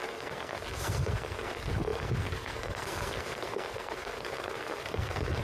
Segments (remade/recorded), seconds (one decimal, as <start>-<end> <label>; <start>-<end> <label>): 0.0-5.4 remade